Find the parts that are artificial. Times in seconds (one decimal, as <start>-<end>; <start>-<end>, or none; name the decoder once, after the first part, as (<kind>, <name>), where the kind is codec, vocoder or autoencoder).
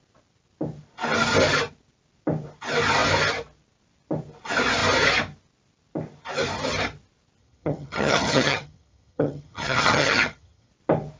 7.4-10.7 (vocoder, HiFi-GAN)